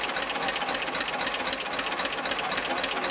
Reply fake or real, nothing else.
real